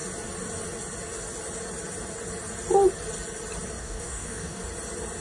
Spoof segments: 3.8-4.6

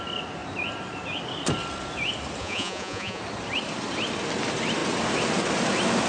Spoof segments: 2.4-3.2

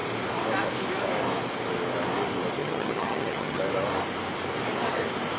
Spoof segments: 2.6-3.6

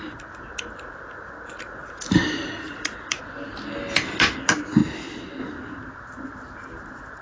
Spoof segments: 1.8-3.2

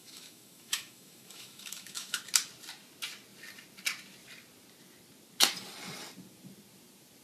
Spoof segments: 0.0-2.2